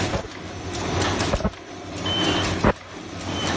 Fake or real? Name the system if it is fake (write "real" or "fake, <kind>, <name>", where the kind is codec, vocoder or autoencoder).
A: fake, vocoder, BigVGAN v2